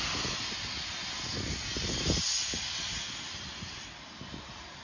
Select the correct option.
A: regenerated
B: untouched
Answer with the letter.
B